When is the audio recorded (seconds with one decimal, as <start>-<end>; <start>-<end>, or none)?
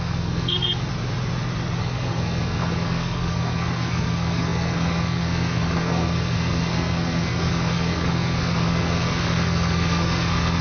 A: 0.9-1.8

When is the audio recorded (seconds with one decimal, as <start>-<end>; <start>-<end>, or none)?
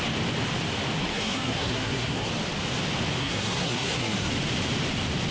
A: 0.0-1.0; 2.3-3.2; 4.3-5.3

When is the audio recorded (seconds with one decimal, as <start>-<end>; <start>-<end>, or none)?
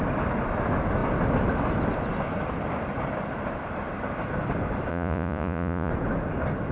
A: 0.0-4.9; 5.9-6.7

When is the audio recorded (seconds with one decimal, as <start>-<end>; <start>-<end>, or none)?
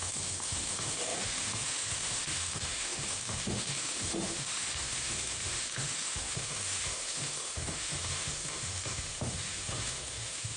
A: none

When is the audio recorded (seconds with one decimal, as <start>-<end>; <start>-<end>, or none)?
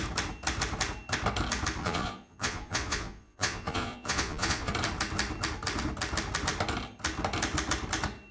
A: 0.0-1.8; 4.7-8.3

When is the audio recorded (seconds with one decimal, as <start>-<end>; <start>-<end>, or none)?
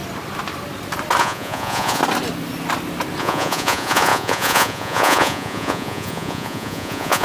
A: 0.0-1.2; 2.0-3.2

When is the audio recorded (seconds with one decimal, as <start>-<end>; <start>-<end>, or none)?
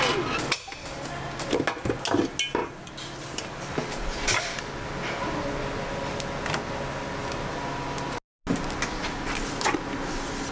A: 0.0-10.5